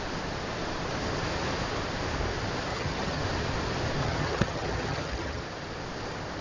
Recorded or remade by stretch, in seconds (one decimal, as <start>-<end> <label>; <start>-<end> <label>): 0.0-2.7 recorded; 2.7-3.2 remade; 3.2-4.0 recorded; 4.0-5.4 remade; 5.4-6.4 recorded